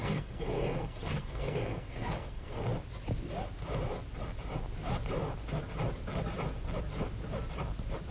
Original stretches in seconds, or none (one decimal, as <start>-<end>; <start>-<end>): 2.6-8.1